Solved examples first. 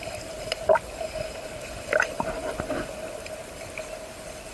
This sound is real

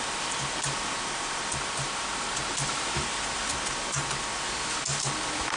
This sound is real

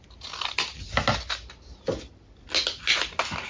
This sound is real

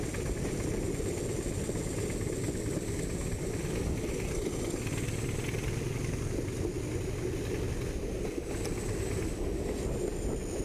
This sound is real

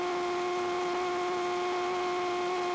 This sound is real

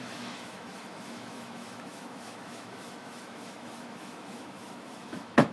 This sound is fake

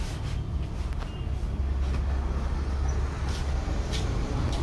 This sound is real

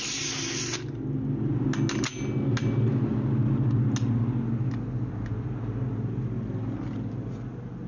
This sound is real